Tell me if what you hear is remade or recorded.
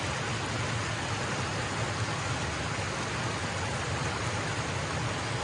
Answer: recorded